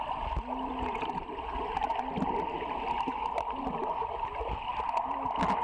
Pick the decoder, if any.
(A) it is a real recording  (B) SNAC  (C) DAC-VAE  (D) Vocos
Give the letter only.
A